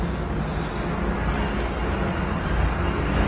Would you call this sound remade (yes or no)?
no